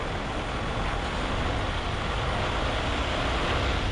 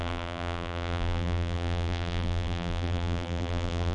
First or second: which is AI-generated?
second